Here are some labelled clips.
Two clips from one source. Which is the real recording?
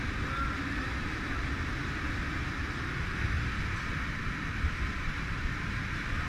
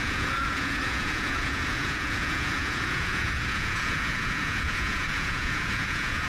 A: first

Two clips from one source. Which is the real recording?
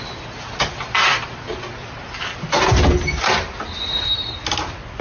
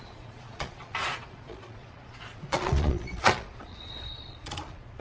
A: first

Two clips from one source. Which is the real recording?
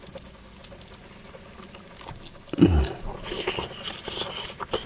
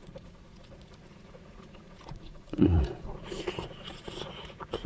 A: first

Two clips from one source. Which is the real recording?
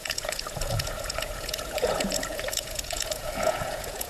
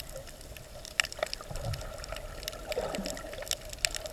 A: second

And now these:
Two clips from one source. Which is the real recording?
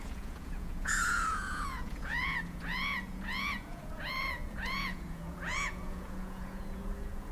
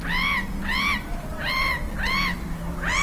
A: second